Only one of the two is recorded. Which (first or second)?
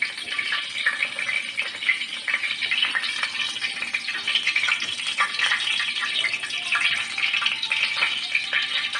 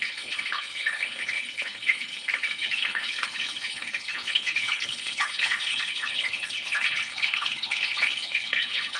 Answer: first